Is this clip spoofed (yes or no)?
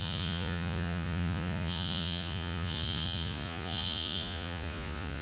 yes